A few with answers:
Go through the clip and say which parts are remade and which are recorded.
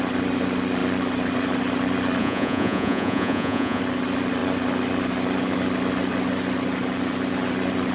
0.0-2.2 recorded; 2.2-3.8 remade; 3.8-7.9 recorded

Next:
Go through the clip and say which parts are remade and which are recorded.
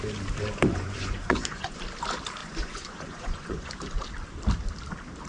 0.0-0.7 recorded; 0.7-1.8 remade; 1.8-2.4 recorded; 2.4-3.7 remade; 3.7-5.3 recorded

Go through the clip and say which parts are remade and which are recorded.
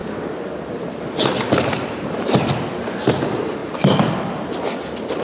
0.0-5.2 recorded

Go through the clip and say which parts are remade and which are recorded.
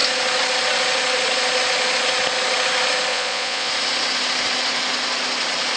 0.0-3.1 recorded; 3.1-3.7 remade; 3.7-5.8 recorded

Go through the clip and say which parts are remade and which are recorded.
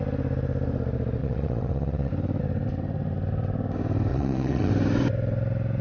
0.0-1.2 recorded; 1.2-2.1 remade; 2.1-4.1 recorded; 4.1-4.7 remade; 4.7-5.8 recorded